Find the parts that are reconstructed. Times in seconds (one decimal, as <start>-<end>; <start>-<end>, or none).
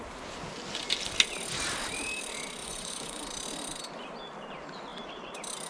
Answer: 2.6-3.2